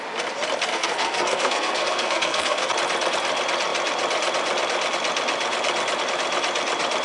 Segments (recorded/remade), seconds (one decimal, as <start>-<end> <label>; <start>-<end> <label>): 0.0-0.7 recorded; 0.7-2.7 remade; 2.7-7.0 recorded